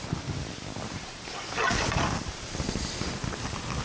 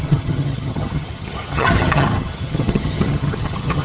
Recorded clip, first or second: first